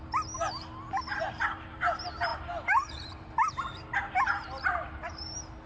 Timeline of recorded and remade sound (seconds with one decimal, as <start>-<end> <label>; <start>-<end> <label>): 0.0-2.3 recorded; 2.3-2.9 remade; 2.9-4.7 recorded; 4.7-5.3 remade; 5.3-5.7 recorded